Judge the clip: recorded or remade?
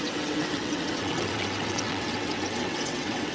remade